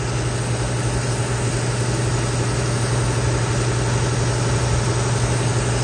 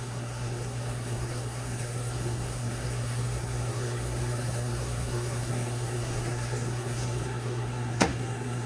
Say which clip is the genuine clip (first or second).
first